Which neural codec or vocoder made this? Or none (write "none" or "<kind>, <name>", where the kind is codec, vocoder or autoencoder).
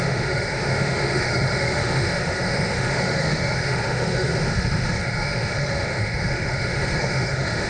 autoencoder, DAC-VAE